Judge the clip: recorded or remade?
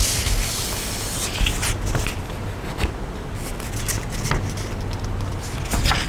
recorded